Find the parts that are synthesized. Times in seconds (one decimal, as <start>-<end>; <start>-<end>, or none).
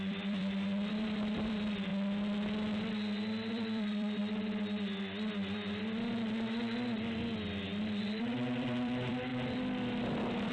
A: 0.0-1.9; 3.5-4.2; 8.0-10.5